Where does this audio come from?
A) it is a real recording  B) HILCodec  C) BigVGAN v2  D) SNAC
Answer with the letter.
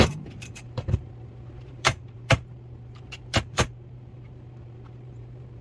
C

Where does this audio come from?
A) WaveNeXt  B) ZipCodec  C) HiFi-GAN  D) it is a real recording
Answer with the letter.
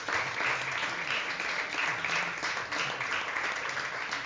D